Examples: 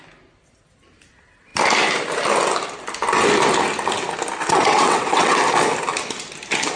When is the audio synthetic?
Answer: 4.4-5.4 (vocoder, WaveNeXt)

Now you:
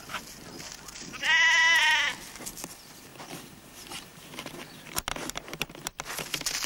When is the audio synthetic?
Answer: 3.1-4.5 (vocoder, BigVGAN v2); 5.1-6.0

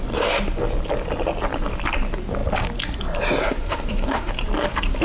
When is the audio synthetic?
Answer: 3.4-4.3 (codec, SNAC)

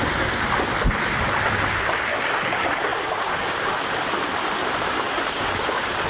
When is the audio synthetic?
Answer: none

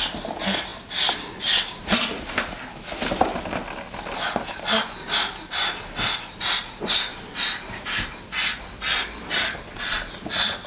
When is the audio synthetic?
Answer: none

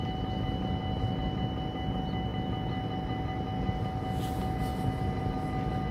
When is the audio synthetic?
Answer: none

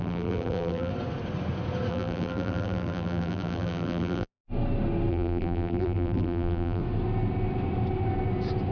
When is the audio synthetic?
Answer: 0.0-0.9 (vocoder, BigVGAN v2); 1.9-4.4; 5.1-6.8

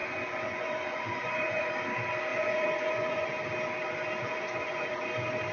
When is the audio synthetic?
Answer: 0.0-1.7 (vocoder, Vocos); 2.3-3.3; 4.2-5.1